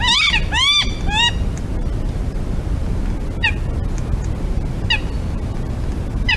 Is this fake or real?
real